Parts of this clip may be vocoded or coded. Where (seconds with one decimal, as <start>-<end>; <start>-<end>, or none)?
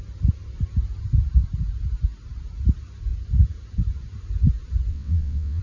4.9-5.6